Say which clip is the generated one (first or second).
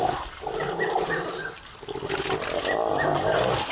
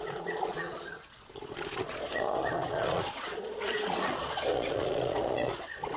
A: second